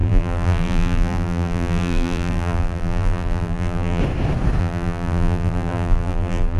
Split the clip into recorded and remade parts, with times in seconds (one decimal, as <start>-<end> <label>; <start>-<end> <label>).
0.0-4.0 remade; 4.0-4.6 recorded; 4.6-6.6 remade